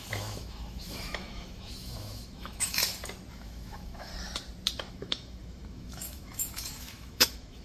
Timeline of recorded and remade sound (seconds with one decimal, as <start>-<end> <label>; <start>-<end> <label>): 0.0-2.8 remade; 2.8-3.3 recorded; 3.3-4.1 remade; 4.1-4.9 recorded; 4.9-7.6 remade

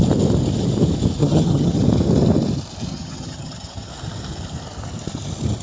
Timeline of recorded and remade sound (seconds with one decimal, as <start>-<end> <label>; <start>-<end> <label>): 0.0-1.2 recorded; 1.2-1.8 remade; 1.8-2.9 recorded; 2.9-3.9 remade; 3.9-5.6 recorded

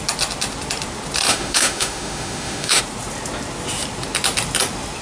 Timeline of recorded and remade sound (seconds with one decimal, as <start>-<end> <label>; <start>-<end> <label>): 0.0-1.3 recorded; 1.3-2.8 remade; 2.8-5.0 recorded

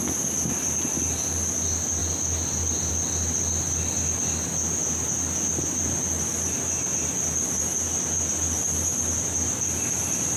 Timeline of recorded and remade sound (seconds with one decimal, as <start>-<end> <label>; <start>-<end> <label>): 0.0-10.4 recorded

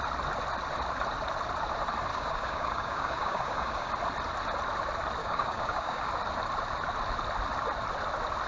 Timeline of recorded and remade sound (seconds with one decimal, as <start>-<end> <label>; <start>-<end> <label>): 0.0-2.1 recorded; 2.1-3.9 remade; 3.9-5.2 recorded; 5.2-6.1 remade; 6.1-8.5 recorded

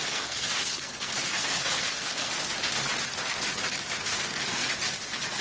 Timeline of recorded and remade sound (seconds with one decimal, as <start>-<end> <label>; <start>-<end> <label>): 0.0-2.3 remade; 2.3-4.1 recorded; 4.1-4.7 remade; 4.7-5.4 recorded

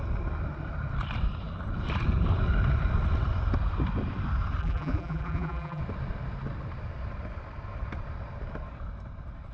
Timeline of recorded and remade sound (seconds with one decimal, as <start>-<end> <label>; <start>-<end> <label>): 0.0-4.6 recorded; 4.6-5.8 remade; 5.8-9.5 recorded

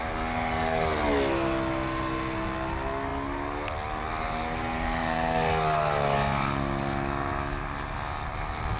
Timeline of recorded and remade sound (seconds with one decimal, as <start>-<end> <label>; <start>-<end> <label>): 0.0-8.8 recorded